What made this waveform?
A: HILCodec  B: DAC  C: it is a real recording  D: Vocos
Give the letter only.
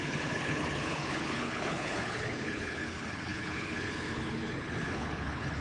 A